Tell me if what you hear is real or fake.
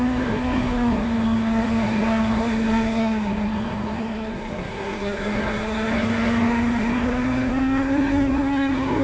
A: fake